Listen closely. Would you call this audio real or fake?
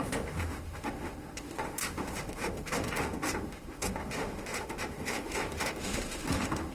fake